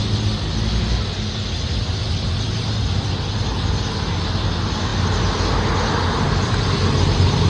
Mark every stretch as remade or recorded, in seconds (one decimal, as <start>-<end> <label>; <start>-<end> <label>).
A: 0.0-7.5 recorded